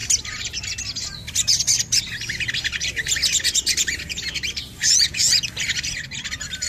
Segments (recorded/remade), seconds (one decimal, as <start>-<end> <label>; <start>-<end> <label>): 0.0-4.8 recorded; 4.8-5.4 remade; 5.4-6.7 recorded